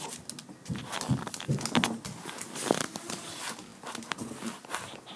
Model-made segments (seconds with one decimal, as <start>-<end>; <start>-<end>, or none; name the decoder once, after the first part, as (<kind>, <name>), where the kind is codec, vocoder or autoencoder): none